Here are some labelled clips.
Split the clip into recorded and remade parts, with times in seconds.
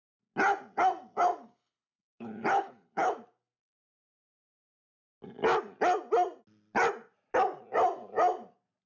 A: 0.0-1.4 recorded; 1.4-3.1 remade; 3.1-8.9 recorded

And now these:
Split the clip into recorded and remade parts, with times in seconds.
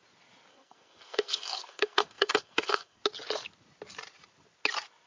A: 0.0-0.5 recorded; 0.5-3.0 remade; 3.0-5.1 recorded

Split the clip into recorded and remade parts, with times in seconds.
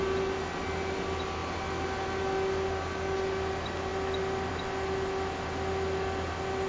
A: 0.0-6.7 recorded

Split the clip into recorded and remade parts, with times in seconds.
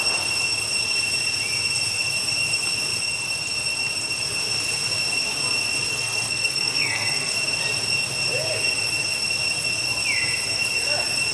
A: 0.0-5.9 recorded; 5.9-7.3 remade; 7.3-11.3 recorded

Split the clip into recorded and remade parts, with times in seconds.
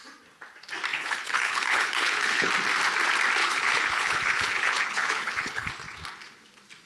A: 0.0-0.9 recorded; 0.9-2.5 remade; 2.5-3.4 recorded; 3.4-5.7 remade; 5.7-6.9 recorded